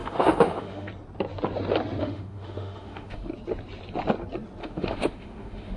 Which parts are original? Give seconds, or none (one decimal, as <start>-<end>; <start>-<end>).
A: 0.9-2.0; 3.3-4.6